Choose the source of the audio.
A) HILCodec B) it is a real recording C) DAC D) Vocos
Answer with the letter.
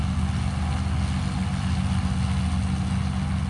B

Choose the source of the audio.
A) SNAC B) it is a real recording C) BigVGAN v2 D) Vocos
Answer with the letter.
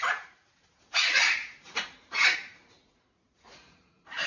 D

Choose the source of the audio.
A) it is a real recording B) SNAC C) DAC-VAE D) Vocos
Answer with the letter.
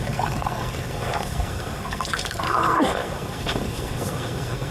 B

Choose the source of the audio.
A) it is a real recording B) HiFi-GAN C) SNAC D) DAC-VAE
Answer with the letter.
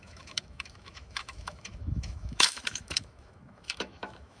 D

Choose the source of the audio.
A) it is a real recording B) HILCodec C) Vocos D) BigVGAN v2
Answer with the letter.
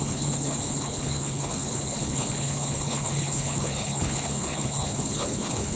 B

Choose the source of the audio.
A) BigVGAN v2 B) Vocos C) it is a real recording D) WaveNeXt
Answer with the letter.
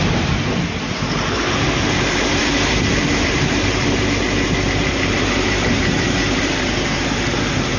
A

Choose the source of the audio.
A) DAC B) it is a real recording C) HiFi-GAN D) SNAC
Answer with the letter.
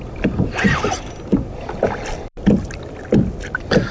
B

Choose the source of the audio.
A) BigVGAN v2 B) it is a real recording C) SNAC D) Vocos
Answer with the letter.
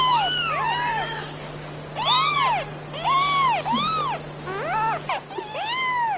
B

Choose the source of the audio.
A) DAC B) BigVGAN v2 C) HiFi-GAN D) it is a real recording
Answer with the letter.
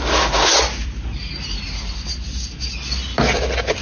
D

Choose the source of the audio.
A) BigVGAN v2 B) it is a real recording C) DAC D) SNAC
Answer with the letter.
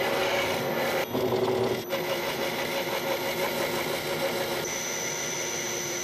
B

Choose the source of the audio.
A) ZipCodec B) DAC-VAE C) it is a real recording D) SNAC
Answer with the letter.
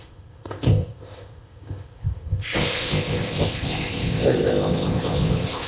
A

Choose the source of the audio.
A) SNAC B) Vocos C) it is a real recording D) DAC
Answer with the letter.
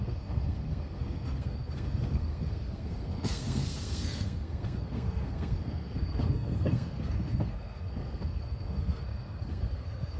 A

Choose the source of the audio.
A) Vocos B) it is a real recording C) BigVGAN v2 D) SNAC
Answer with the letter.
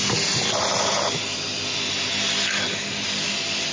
B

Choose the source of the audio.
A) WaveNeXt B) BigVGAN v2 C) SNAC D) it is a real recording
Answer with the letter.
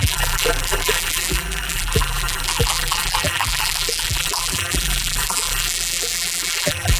B